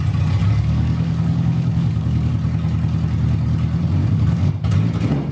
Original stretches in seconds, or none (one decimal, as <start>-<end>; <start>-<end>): 0.0-0.4; 2.3-4.0; 4.5-5.3